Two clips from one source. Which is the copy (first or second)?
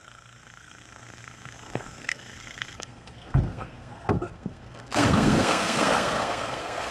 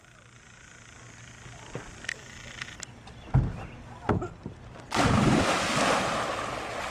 first